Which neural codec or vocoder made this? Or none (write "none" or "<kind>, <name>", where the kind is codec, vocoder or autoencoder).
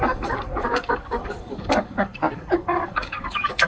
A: codec, DAC